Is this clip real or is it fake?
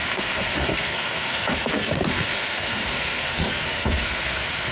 fake